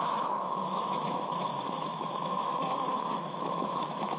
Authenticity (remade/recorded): remade